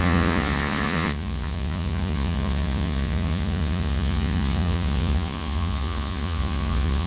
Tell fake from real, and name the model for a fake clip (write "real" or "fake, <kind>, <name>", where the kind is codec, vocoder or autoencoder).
fake, vocoder, Vocos